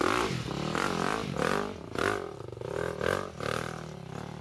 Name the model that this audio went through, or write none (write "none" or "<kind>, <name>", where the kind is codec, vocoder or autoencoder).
none